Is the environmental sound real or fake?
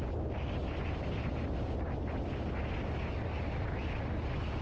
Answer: real